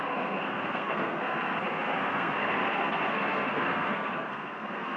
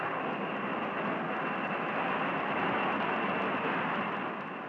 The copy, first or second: first